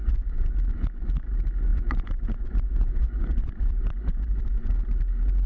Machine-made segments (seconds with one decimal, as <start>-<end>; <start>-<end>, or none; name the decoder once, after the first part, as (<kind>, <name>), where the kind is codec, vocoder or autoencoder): 0.0-0.5 (vocoder, Vocos); 1.7-4.7